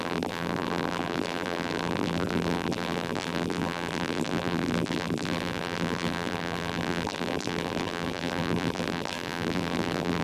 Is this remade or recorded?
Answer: remade